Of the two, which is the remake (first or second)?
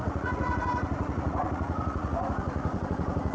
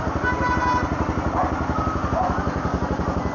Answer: first